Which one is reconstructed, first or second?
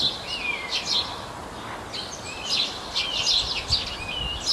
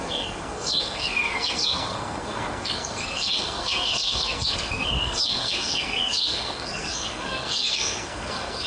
second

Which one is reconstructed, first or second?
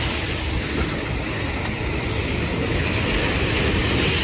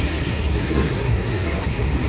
second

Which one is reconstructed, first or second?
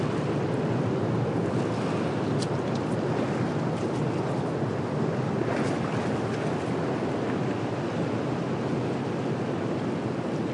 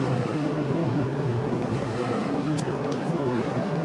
second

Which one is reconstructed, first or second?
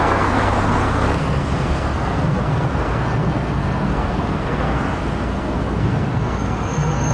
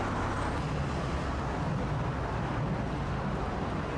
first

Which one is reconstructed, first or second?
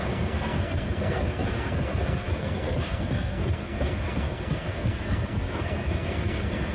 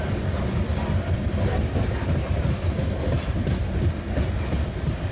first